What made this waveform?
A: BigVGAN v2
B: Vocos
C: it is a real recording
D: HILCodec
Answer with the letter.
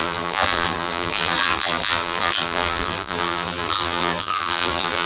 A